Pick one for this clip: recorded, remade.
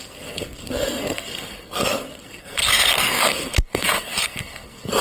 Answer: remade